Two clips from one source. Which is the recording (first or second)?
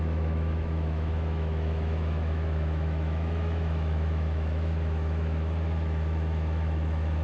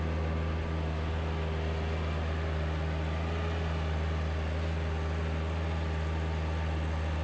second